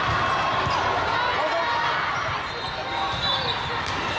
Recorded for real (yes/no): yes